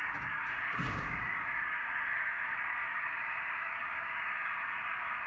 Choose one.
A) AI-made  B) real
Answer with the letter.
A